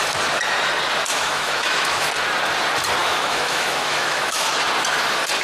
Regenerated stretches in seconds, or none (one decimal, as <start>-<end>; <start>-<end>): 1.1-2.1; 3.0-4.5